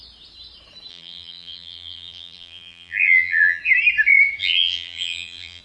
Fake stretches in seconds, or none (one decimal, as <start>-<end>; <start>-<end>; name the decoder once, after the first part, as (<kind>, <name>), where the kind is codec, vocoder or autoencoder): 0.9-3.6 (vocoder, BigVGAN v2); 4.4-5.6